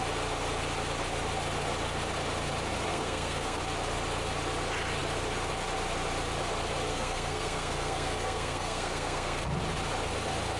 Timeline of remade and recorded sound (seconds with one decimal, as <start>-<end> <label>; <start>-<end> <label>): 0.0-2.9 recorded; 2.9-3.6 remade; 3.6-6.9 recorded; 6.9-9.4 remade; 9.4-10.6 recorded